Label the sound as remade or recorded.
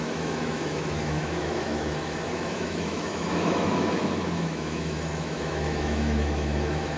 remade